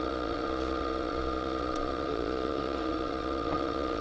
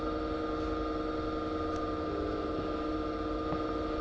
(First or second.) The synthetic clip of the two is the first